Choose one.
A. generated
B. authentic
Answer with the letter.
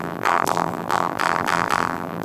A